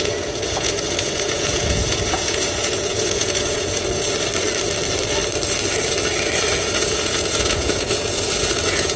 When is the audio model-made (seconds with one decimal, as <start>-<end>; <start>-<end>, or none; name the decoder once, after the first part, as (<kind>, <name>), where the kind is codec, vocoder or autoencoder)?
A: 0.0-3.8 (vocoder, Vocos); 6.6-9.0